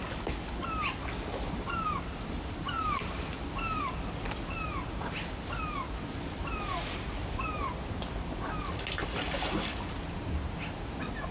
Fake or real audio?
real